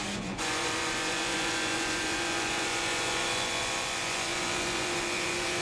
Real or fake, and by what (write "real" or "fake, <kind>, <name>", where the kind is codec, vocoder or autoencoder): fake, vocoder, Vocos